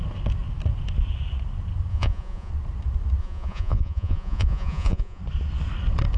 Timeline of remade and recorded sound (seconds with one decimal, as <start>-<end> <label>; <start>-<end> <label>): 0.0-1.9 recorded; 1.9-2.5 remade; 2.5-3.2 recorded; 3.2-5.2 remade; 5.2-6.2 recorded